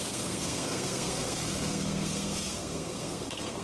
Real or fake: fake